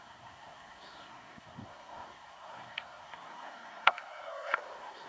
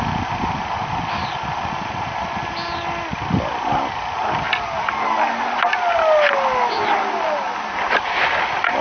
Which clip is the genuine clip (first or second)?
second